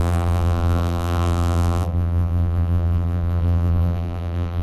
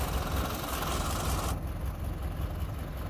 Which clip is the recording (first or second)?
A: second